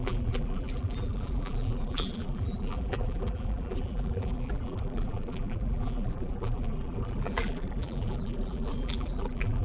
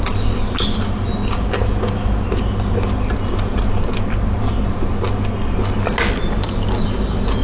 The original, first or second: second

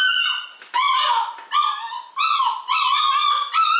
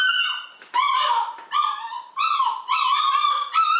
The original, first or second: first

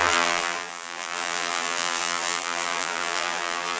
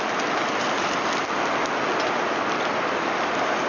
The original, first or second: second